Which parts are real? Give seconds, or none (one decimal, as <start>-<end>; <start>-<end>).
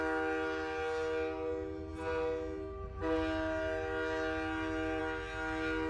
0.0-5.9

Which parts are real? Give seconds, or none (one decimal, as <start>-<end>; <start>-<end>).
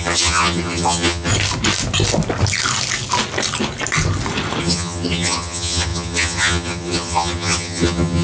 1.3-4.6